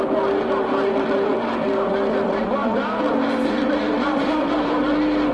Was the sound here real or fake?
real